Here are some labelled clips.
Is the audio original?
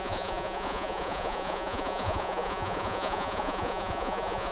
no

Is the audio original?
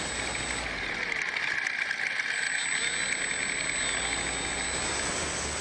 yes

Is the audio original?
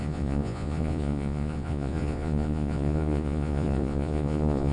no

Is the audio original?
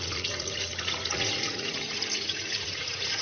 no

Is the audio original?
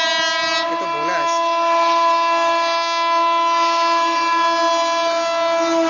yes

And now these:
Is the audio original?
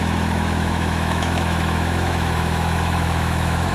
no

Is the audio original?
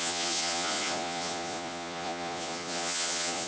no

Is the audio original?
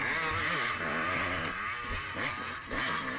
yes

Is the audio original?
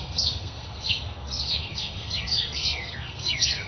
no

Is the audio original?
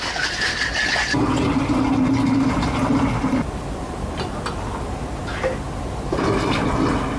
yes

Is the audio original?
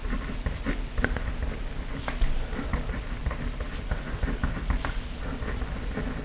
yes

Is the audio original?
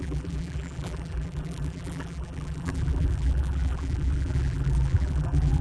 no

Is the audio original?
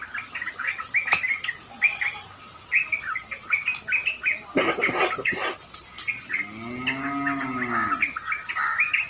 yes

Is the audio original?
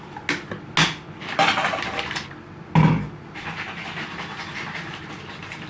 yes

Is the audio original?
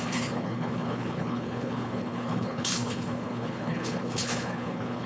no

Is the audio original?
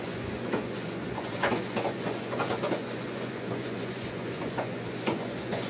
no